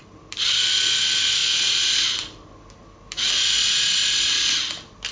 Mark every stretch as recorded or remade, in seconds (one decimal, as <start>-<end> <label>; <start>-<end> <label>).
0.0-5.1 recorded

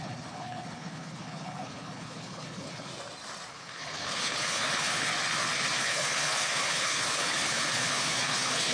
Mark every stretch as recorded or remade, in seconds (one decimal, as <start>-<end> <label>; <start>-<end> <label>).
0.0-2.9 remade; 2.9-3.5 recorded; 3.5-5.1 remade; 5.1-5.8 recorded; 5.8-8.7 remade

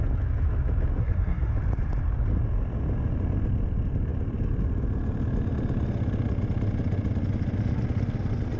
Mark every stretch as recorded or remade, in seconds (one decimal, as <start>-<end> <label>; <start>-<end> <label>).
0.0-1.0 recorded; 1.0-1.5 remade; 1.5-8.6 recorded

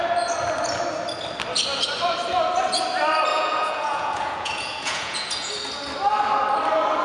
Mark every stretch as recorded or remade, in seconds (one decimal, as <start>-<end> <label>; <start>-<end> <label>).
0.0-3.3 recorded; 3.3-5.5 remade; 5.5-7.0 recorded